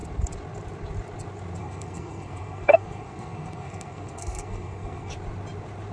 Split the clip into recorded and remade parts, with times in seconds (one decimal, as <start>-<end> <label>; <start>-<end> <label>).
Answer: 0.0-1.6 recorded; 1.6-5.1 remade; 5.1-5.9 recorded